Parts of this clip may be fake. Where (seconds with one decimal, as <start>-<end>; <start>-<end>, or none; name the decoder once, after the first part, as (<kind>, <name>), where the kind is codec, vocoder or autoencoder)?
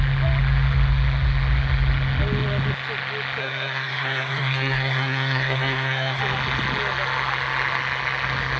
3.4-6.2 (codec, SNAC)